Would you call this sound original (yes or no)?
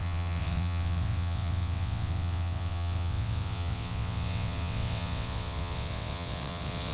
no